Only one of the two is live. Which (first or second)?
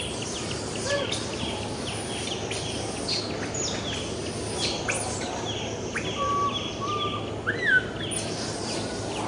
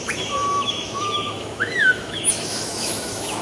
first